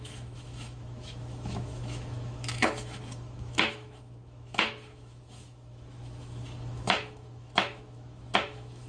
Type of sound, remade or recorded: remade